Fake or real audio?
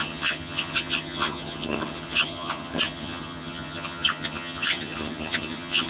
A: fake